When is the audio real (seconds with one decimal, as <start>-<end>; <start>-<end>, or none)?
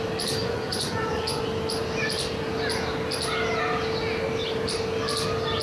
0.0-0.4; 1.4-5.6